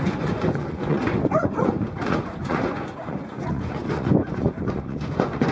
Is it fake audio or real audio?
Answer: fake